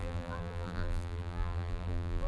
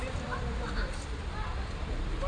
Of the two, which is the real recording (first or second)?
second